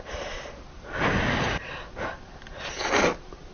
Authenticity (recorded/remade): recorded